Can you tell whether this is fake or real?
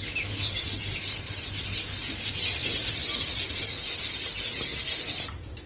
real